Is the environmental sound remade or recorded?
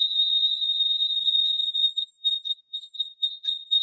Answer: remade